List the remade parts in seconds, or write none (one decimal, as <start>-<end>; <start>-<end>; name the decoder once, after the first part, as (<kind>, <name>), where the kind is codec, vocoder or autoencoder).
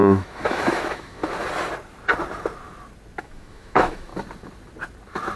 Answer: 0.0-1.2 (autoencoder, DAC-VAE); 3.2-4.1